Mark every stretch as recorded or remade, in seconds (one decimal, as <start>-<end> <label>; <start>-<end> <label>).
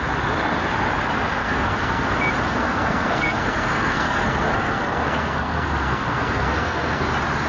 0.0-1.4 recorded; 1.4-2.1 remade; 2.1-2.5 recorded; 2.5-7.0 remade; 7.0-7.5 recorded